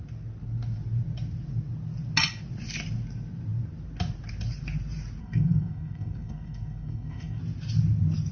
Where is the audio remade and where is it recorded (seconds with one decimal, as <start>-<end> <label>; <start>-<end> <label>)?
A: 0.0-5.2 recorded; 5.2-7.4 remade; 7.4-8.3 recorded